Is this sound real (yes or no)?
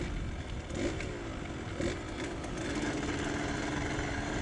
yes